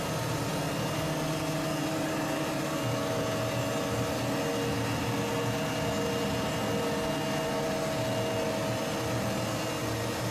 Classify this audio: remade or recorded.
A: recorded